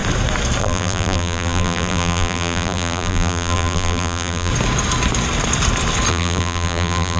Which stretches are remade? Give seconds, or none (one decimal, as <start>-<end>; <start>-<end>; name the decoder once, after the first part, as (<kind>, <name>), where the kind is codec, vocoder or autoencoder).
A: 0.6-4.5 (vocoder, BigVGAN v2); 6.1-7.2